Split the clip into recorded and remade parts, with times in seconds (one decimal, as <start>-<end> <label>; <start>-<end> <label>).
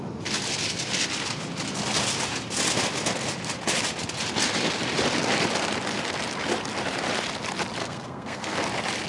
0.0-7.8 recorded; 7.8-8.6 remade; 8.6-9.1 recorded